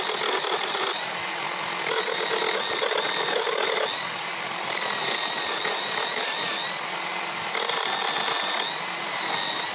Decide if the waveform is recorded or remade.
recorded